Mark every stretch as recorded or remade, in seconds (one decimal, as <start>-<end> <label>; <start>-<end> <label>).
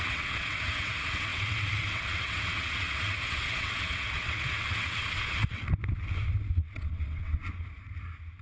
0.0-5.6 remade; 5.6-6.6 recorded; 6.6-7.4 remade; 7.4-8.4 recorded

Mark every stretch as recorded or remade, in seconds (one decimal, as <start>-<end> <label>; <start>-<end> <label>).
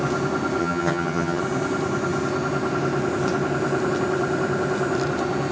0.0-0.6 recorded; 0.6-1.4 remade; 1.4-5.5 recorded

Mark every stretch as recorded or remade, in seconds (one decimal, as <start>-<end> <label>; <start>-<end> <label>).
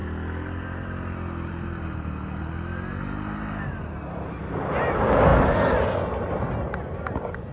0.0-7.5 recorded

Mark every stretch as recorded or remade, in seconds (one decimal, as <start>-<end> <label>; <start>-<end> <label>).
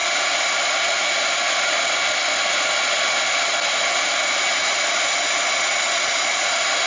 0.0-6.9 recorded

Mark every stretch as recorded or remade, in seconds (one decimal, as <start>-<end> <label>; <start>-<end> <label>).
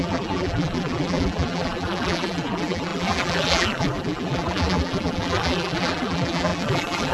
0.0-7.1 remade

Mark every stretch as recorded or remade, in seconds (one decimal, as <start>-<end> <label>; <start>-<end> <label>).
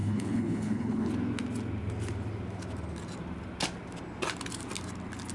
0.0-1.1 remade; 1.1-5.3 recorded